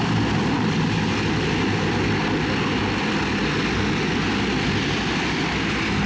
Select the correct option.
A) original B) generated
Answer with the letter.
A